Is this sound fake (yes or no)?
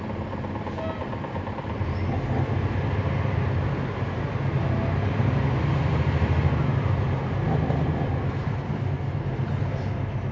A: no